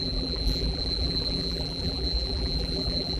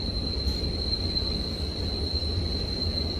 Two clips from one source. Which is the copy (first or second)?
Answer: first